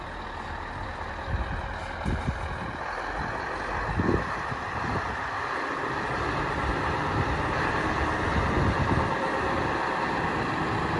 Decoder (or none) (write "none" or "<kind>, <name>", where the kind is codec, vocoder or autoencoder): none